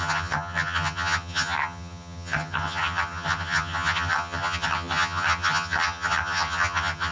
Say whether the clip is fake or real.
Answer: fake